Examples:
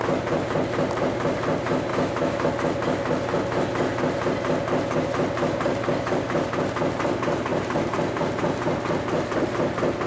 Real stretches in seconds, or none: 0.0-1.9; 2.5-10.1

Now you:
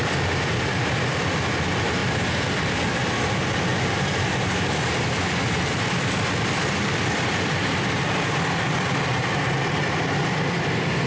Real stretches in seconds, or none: 0.0-11.1

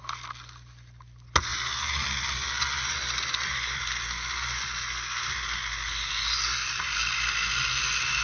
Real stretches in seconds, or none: 0.0-8.2

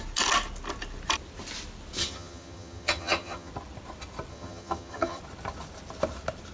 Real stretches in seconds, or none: 0.0-2.0; 3.5-4.3; 5.2-6.5

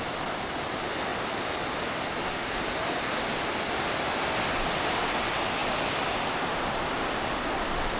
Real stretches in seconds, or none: 0.0-8.0